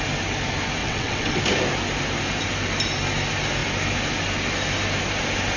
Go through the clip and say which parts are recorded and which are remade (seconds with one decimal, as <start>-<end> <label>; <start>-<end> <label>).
0.0-0.8 recorded; 0.8-1.4 remade; 1.4-5.6 recorded